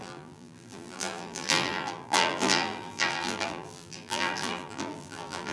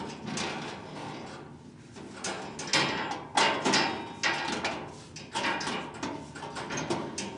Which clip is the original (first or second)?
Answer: second